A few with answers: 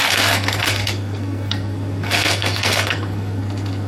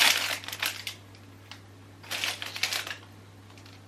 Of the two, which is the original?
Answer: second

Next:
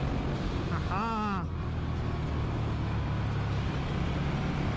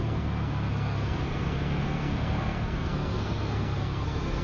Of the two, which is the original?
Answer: first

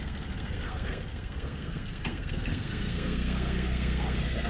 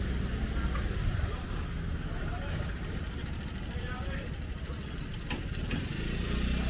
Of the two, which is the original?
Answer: second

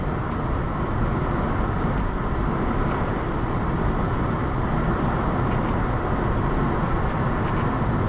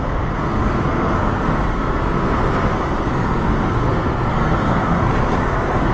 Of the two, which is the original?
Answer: first